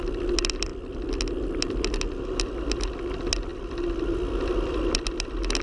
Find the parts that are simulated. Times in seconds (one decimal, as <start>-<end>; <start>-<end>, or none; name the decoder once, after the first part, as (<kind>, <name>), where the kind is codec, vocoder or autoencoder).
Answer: none